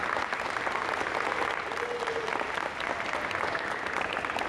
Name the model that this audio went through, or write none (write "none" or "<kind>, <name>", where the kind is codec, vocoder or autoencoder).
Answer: none